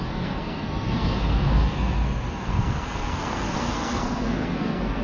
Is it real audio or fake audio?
fake